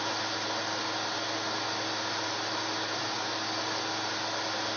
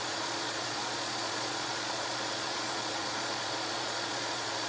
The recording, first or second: first